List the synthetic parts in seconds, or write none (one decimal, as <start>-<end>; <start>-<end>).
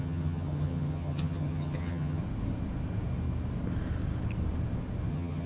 0.0-2.2; 5.1-5.5